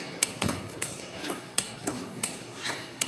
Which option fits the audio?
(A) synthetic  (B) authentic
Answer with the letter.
A